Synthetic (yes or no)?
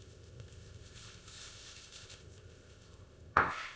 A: yes